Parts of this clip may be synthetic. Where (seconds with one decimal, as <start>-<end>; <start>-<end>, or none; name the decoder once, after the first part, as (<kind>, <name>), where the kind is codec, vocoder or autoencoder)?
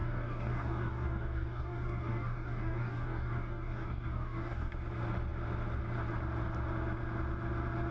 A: 0.0-4.7 (codec, DAC)